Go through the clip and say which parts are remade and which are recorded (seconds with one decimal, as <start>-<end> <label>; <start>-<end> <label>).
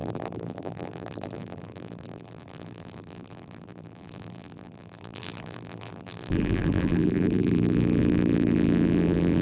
0.0-9.4 remade